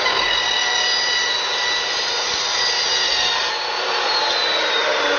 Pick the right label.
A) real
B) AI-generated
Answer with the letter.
A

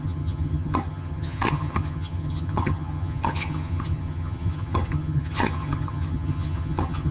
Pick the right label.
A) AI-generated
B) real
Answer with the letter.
A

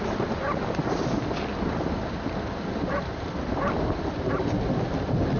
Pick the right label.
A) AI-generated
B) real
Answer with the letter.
B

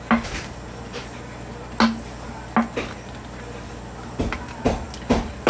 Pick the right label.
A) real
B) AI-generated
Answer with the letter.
A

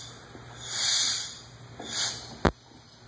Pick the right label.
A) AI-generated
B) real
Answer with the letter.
B